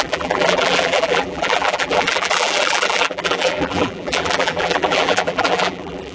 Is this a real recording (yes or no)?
no